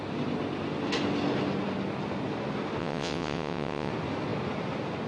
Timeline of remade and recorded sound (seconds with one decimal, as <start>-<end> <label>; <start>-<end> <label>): 0.0-2.8 recorded; 2.8-3.9 remade; 3.9-5.1 recorded